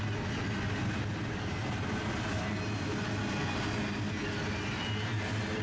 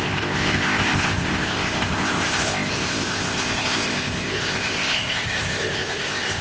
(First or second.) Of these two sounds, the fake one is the second